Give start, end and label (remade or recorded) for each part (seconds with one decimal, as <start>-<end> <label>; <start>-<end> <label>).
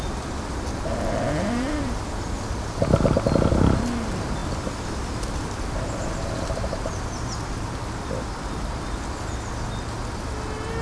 0.0-4.4 recorded; 4.4-7.7 remade; 7.7-10.8 recorded